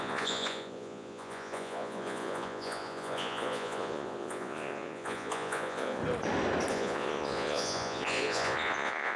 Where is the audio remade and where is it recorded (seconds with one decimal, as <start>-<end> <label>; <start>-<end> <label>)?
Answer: 0.0-6.0 remade; 6.0-6.7 recorded; 6.7-9.2 remade